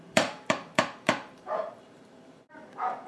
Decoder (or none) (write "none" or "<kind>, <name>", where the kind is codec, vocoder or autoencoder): vocoder, BigVGAN v2